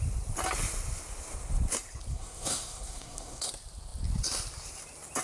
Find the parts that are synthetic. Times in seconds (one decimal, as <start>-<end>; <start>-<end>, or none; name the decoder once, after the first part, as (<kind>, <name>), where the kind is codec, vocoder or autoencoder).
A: 2.1-3.5 (codec, SNAC)